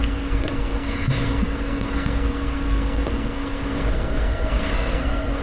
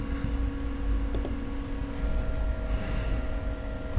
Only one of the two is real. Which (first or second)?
second